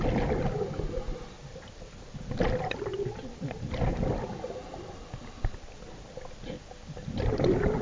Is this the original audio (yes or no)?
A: yes